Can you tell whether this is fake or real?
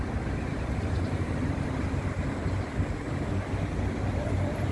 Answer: real